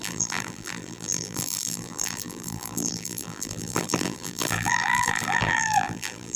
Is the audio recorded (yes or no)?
no